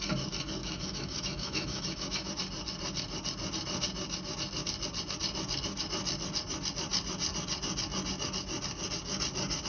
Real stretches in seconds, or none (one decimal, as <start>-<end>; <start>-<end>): 0.0-0.6; 2.3-9.7